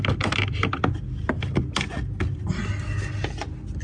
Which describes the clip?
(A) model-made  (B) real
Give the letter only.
B